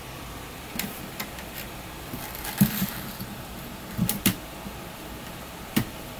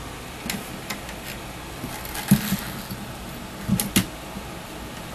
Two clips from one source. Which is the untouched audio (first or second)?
second